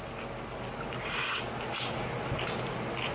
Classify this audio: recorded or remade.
recorded